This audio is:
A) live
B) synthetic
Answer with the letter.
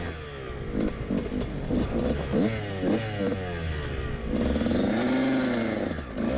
A